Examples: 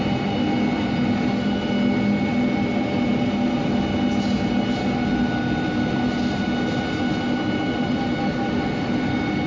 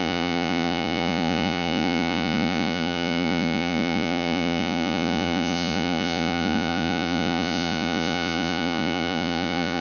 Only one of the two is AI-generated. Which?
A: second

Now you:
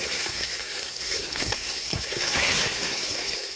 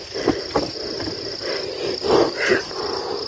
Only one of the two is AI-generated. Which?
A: first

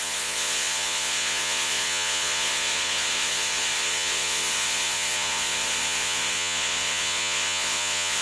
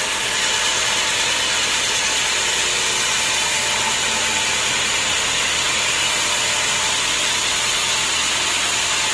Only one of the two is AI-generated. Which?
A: first